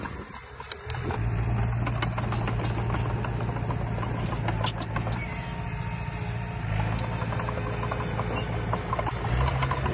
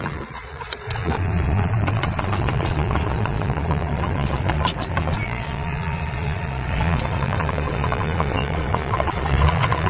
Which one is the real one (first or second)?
first